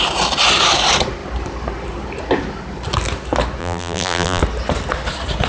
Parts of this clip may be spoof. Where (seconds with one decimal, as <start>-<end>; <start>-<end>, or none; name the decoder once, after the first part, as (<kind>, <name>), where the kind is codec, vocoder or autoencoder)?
3.6-4.4 (vocoder, BigVGAN v2)